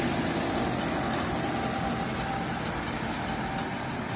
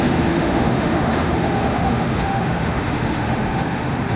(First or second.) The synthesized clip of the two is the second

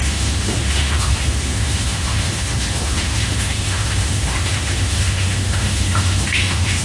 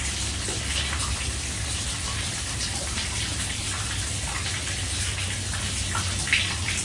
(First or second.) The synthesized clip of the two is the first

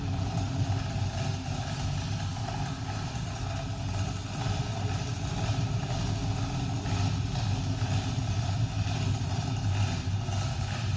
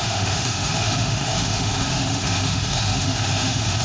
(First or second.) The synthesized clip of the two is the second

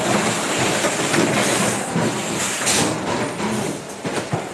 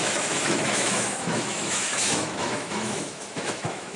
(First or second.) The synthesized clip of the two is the second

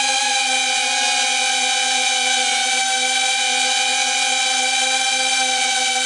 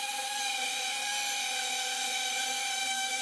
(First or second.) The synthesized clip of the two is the second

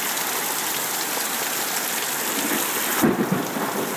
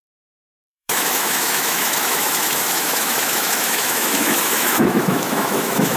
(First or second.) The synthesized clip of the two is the second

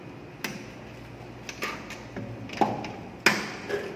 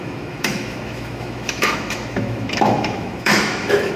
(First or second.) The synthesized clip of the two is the second